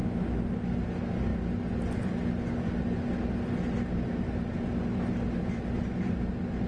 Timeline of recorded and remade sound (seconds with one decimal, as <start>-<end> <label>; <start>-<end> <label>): 0.0-6.7 recorded